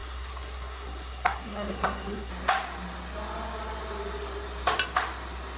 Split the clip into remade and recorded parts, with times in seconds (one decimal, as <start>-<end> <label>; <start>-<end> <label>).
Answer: 0.0-2.3 remade; 2.3-5.6 recorded